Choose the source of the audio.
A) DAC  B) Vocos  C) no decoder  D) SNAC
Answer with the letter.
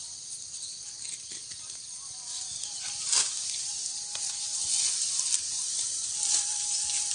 C